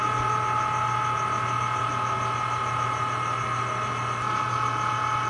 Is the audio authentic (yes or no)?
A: yes